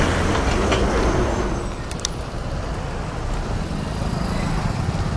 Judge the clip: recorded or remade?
recorded